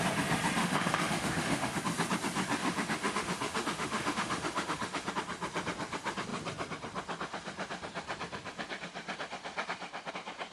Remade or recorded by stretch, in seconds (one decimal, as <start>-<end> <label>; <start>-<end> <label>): 0.0-0.6 recorded; 0.6-1.8 remade; 1.8-2.6 recorded; 2.6-5.1 remade; 5.1-10.5 recorded